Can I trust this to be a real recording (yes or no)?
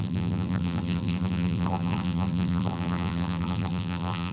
no